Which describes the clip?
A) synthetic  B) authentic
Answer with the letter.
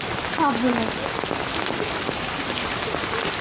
B